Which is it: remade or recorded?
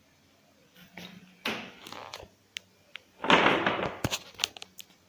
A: recorded